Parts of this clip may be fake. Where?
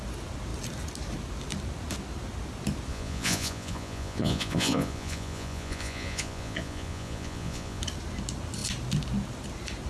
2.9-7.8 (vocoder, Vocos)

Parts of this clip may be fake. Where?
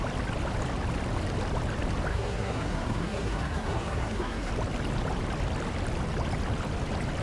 2.1-4.5 (codec, SNAC)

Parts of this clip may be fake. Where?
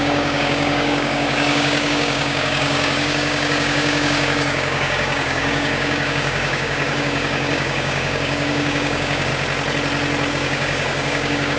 0.0-9.3 (codec, DAC); 10.3-11.6